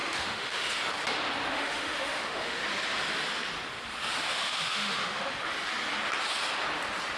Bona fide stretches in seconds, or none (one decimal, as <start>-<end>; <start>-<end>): 0.7-1.5; 2.6-4.1; 5.5-7.2